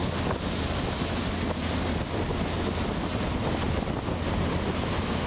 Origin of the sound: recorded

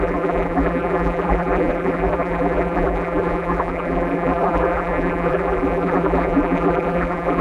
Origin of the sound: remade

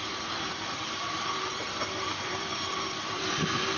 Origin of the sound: remade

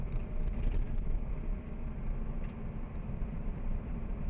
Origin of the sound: remade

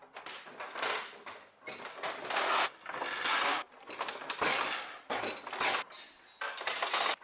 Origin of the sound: recorded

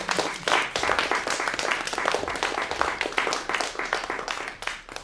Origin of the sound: remade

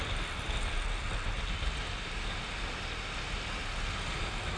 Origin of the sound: recorded